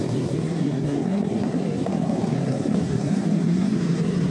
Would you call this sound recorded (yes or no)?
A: no